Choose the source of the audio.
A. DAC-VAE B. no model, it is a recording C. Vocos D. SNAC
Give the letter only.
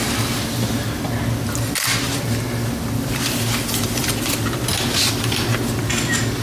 B